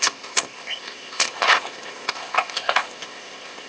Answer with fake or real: fake